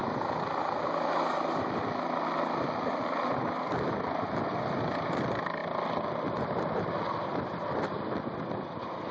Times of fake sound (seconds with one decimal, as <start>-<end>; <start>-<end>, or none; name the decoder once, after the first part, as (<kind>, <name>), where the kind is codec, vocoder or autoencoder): none